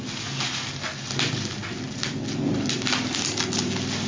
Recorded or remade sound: recorded